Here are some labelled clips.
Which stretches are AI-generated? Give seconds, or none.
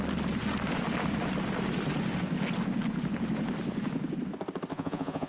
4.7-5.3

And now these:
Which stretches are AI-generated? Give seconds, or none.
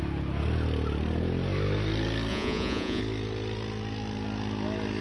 2.3-3.0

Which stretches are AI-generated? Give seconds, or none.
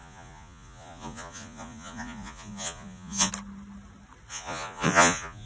0.0-3.3; 4.3-5.5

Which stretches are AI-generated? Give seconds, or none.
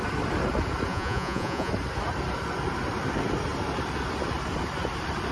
0.9-1.7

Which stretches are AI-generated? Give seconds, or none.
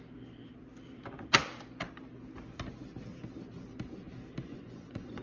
4.4-5.2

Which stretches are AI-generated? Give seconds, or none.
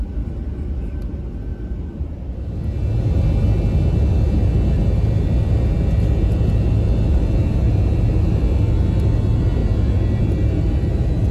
none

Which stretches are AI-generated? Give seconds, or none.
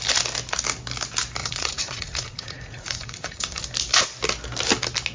1.4-3.6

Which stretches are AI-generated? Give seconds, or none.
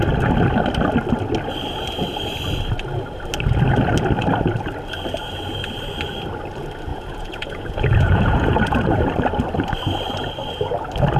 6.9-9.0